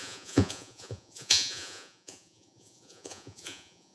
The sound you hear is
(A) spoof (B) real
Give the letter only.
A